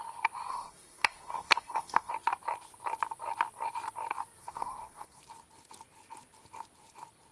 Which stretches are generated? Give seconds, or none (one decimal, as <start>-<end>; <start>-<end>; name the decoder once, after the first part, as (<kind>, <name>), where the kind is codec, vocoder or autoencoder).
0.5-2.1 (codec, SNAC); 4.4-5.2